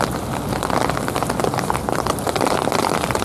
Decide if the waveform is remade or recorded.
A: recorded